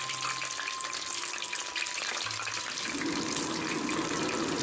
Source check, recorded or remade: recorded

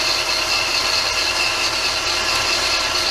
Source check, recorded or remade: recorded